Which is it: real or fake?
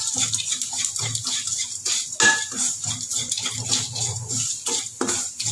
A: real